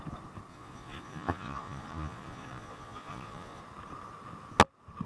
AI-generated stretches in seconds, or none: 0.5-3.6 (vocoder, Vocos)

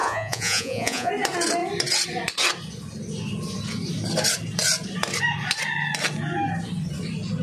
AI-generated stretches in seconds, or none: 0.0-1.1 (vocoder, Vocos)